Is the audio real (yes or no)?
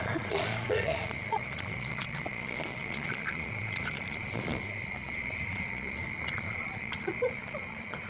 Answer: no